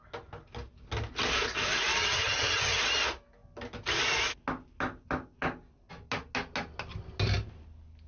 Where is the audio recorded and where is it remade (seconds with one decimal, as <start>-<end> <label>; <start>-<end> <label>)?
0.0-2.0 recorded; 2.0-2.8 remade; 2.8-8.1 recorded